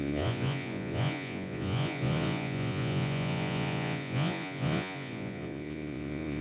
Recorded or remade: remade